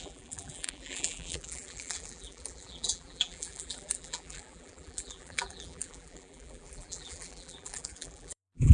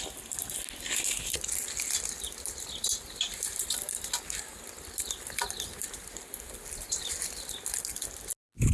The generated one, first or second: first